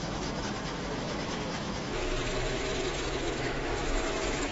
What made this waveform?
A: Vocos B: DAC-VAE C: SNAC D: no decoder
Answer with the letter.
B